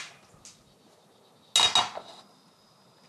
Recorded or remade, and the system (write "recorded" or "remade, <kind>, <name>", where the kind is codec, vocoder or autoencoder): recorded